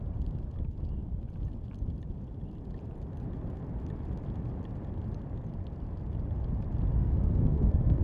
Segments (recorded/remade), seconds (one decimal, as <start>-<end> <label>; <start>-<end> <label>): 0.0-7.0 recorded; 7.0-8.0 remade